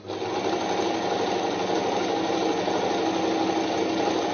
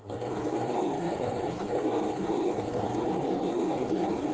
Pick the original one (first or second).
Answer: first